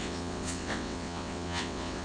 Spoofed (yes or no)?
yes